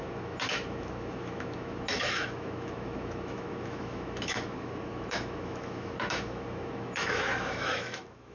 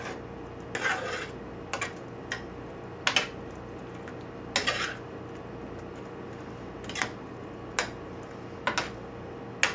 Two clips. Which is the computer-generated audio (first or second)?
first